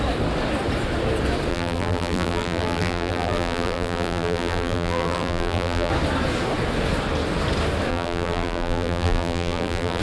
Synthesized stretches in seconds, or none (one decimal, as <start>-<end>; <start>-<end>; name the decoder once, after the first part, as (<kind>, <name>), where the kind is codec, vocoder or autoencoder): 1.5-5.9 (vocoder, BigVGAN v2); 7.9-10.0